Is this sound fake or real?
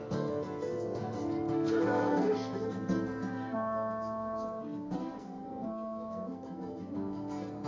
fake